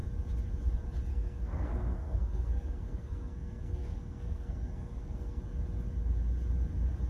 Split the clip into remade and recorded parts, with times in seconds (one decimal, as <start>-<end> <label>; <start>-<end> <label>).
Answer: 0.0-1.1 recorded; 1.1-5.4 remade; 5.4-7.1 recorded